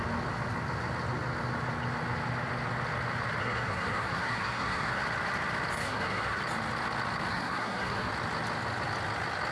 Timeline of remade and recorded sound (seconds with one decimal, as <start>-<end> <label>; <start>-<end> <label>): 0.0-3.4 recorded; 3.4-5.0 remade; 5.0-5.8 recorded; 5.8-6.4 remade; 6.4-7.3 recorded; 7.3-8.1 remade; 8.1-9.5 recorded